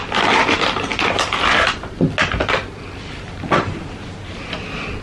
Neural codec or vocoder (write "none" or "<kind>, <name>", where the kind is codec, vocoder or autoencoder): none